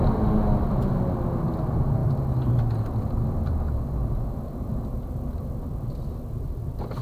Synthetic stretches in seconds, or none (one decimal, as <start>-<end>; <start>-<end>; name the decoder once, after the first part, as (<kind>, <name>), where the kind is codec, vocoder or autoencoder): none